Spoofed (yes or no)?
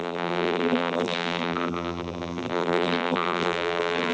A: yes